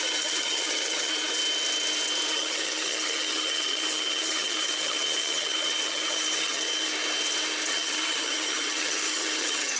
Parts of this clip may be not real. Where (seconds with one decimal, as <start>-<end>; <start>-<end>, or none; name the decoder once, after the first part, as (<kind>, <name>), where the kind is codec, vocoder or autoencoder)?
0.0-1.4 (vocoder, HiFi-GAN); 2.3-6.9; 7.7-9.8